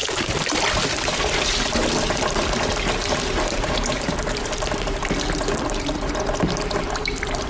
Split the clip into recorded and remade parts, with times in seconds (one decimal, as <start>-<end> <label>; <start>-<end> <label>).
0.0-7.5 remade

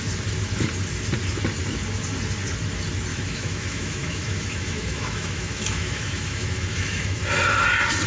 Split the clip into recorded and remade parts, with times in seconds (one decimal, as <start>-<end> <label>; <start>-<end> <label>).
0.0-3.1 recorded; 3.1-7.2 remade; 7.2-8.1 recorded

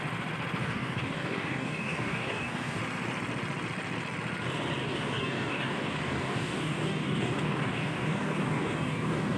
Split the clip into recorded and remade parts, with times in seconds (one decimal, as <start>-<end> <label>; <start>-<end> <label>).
0.0-0.6 recorded; 0.6-2.8 remade; 2.8-4.8 recorded; 4.8-9.4 remade

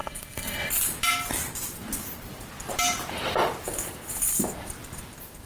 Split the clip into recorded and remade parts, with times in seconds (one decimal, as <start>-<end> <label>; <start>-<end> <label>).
0.0-0.7 remade; 0.7-5.5 recorded

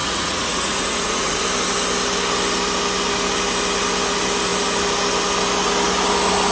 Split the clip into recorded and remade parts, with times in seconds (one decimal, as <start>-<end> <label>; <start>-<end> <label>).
0.0-1.4 remade; 1.4-6.5 recorded

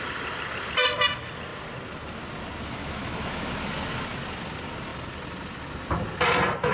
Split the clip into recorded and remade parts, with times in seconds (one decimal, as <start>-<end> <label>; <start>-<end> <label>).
0.0-2.8 recorded; 2.8-3.6 remade; 3.6-6.7 recorded

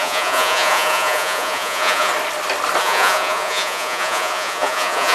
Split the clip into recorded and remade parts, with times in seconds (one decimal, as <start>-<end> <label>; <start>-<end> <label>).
0.0-2.1 remade; 2.1-2.8 recorded; 2.8-5.1 remade

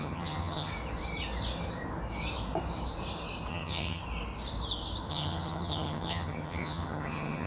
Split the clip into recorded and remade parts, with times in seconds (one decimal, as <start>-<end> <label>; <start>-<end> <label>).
0.0-0.7 remade; 0.7-3.5 recorded; 3.5-4.0 remade; 4.0-5.1 recorded; 5.1-7.5 remade